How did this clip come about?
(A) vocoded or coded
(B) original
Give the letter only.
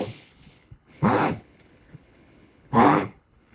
A